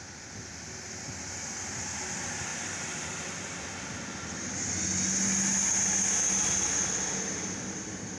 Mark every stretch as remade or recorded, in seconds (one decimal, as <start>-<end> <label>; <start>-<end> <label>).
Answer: 0.0-2.5 recorded; 2.5-3.6 remade; 3.6-8.2 recorded